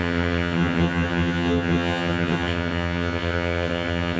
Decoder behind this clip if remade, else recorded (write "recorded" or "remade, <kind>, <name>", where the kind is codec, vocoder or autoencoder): remade, vocoder, HiFi-GAN